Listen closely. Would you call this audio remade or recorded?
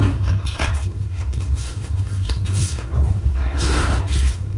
remade